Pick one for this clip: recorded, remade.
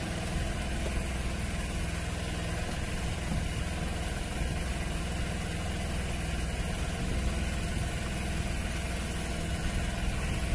recorded